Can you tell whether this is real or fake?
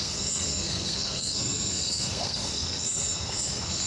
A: fake